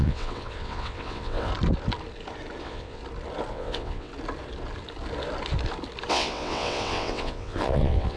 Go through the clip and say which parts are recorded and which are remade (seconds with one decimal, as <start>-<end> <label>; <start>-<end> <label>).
0.0-1.5 remade; 1.5-2.6 recorded; 2.6-3.0 remade; 3.0-3.5 recorded; 3.5-4.1 remade; 4.1-6.1 recorded; 6.1-8.2 remade